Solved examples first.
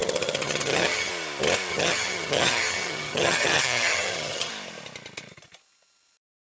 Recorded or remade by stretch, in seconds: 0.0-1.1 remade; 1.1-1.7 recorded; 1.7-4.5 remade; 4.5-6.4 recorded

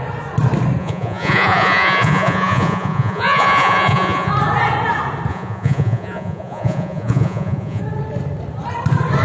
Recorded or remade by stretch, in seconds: 0.0-0.8 recorded; 0.8-4.3 remade; 4.3-5.3 recorded; 5.3-7.8 remade; 7.8-9.2 recorded

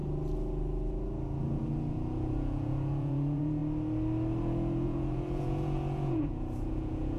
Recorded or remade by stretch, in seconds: 0.0-1.4 recorded; 1.4-3.6 remade; 3.6-4.4 recorded; 4.4-7.2 remade

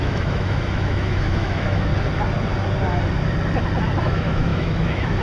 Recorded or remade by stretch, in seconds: 0.0-1.9 remade; 1.9-4.0 recorded; 4.0-5.2 remade